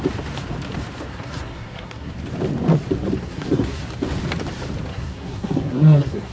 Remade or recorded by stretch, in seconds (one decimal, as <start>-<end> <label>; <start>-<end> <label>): 0.0-1.1 recorded; 1.1-2.1 remade; 2.1-3.2 recorded; 3.2-3.8 remade; 3.8-4.9 recorded; 4.9-6.3 remade